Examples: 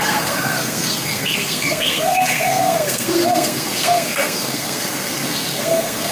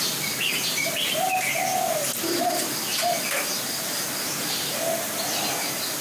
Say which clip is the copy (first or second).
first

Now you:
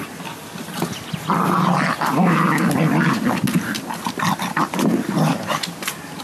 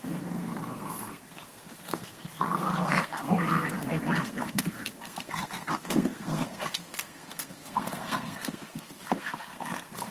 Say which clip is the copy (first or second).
second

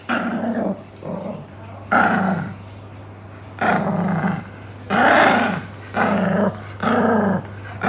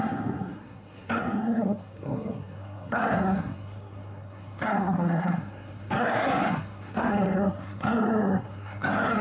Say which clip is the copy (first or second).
second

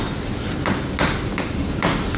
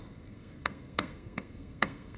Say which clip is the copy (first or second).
second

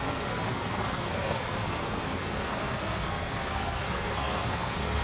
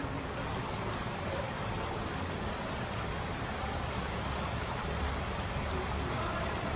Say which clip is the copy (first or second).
first